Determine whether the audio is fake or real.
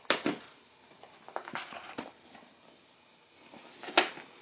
real